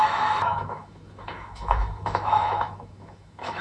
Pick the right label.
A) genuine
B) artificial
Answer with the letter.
B